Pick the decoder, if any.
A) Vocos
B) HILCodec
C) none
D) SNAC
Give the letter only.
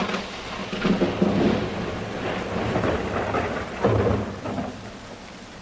C